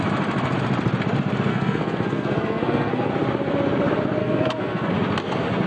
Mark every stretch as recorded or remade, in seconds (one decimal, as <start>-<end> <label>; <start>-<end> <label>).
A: 0.0-1.5 recorded; 1.5-3.1 remade; 3.1-4.2 recorded; 4.2-4.9 remade; 4.9-5.7 recorded